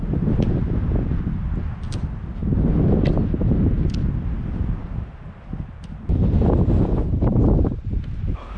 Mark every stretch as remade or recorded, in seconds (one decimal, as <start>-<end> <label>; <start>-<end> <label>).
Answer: 0.0-8.6 recorded